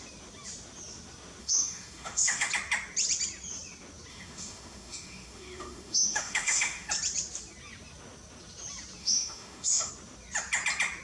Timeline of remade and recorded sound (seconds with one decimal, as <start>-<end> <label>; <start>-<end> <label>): 0.0-1.4 recorded; 1.4-2.5 remade; 2.5-4.1 recorded; 4.1-6.9 remade; 6.9-9.0 recorded; 9.0-9.9 remade; 9.9-11.0 recorded